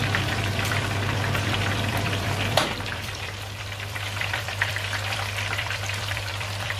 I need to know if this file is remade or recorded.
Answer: remade